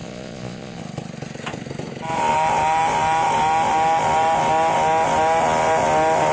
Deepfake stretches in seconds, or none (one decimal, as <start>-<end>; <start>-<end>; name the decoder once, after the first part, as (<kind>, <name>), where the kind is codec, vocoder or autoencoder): 0.0-0.8 (vocoder, Vocos)